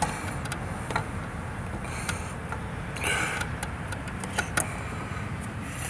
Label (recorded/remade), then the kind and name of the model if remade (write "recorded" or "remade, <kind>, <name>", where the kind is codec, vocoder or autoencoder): recorded